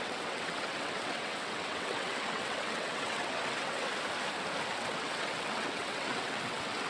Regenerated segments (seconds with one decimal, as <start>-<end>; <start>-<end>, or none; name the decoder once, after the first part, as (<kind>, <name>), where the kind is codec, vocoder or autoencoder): 0.0-3.9 (vocoder, WaveNeXt); 4.8-6.9